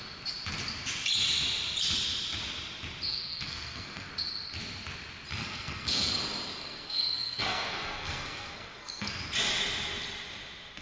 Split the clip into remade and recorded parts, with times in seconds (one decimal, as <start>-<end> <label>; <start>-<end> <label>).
0.0-3.1 recorded; 3.1-4.1 remade; 4.1-5.4 recorded; 5.4-6.1 remade; 6.1-6.5 recorded; 6.5-9.2 remade; 9.2-10.8 recorded